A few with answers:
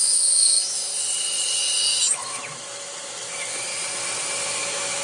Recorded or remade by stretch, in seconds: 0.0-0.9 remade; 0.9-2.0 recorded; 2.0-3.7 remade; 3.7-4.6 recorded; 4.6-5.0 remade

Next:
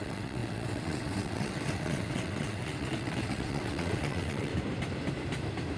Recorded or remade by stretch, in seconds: 0.0-4.5 remade; 4.5-5.8 recorded

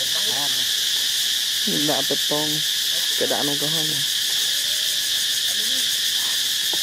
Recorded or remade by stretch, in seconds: 0.0-0.8 recorded; 0.8-1.8 remade; 1.8-6.8 recorded

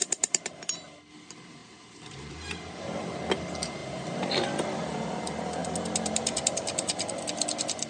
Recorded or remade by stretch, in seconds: 0.0-0.6 remade; 0.6-1.6 recorded; 1.6-2.3 remade; 2.3-3.8 recorded; 3.8-4.3 remade; 4.3-5.6 recorded; 5.6-7.2 remade; 7.2-7.9 recorded

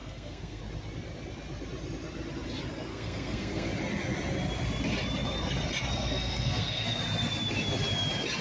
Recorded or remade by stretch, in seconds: 0.0-0.6 remade; 0.6-2.9 recorded; 2.9-3.7 remade; 3.7-6.0 recorded; 6.0-7.0 remade; 7.0-8.4 recorded

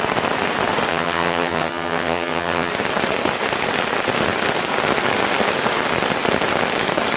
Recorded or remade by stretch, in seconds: 0.0-0.9 recorded; 0.9-2.7 remade; 2.7-7.2 recorded

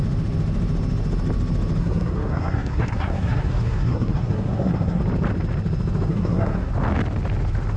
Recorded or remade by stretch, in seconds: 0.0-1.8 recorded; 1.8-5.0 remade; 5.0-6.1 recorded; 6.1-6.7 remade; 6.7-7.8 recorded

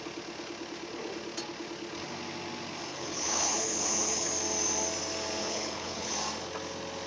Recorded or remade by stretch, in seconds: 0.0-2.9 recorded; 2.9-4.3 remade; 4.3-5.4 recorded; 5.4-6.1 remade; 6.1-7.1 recorded